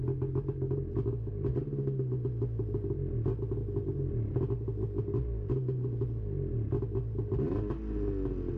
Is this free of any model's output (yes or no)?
yes